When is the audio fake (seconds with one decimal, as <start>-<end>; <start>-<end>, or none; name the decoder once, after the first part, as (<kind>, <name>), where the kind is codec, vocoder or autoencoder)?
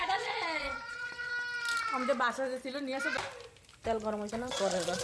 0.0-1.3 (vocoder, Vocos); 4.3-5.0